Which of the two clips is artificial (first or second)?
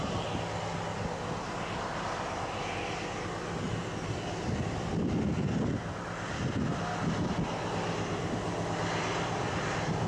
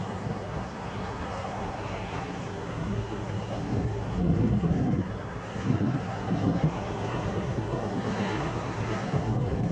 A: second